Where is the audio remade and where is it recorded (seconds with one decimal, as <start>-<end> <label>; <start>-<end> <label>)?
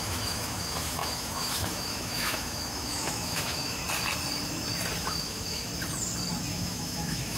0.0-3.8 remade; 3.8-5.0 recorded; 5.0-5.7 remade; 5.7-6.5 recorded; 6.5-7.4 remade